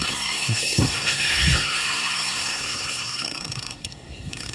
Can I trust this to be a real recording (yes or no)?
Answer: no